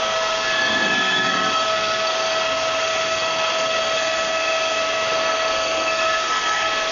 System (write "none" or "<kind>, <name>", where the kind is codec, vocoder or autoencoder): codec, SNAC